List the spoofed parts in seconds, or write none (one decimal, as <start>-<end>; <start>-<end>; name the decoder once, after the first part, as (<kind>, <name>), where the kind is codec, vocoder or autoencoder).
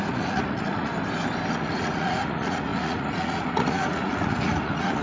0.0-0.9 (vocoder, Vocos); 1.5-5.0